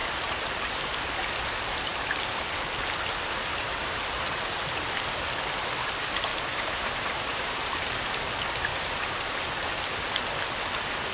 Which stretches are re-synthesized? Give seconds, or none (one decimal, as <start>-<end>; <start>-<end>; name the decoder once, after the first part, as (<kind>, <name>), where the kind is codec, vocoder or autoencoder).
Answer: 6.3-8.2 (vocoder, BigVGAN v2); 8.7-9.3